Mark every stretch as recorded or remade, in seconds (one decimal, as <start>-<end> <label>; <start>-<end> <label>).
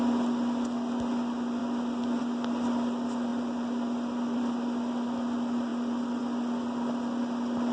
0.0-3.3 recorded; 3.3-4.9 remade; 4.9-5.7 recorded; 5.7-6.2 remade; 6.2-7.7 recorded